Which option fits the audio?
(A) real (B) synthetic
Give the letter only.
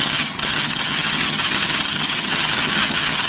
B